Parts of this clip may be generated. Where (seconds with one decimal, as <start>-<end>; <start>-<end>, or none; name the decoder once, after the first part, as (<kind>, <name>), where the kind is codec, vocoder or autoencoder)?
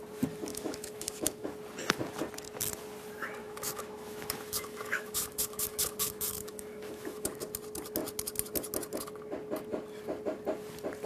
0.5-1.5 (autoencoder, DAC-VAE); 3.4-7.4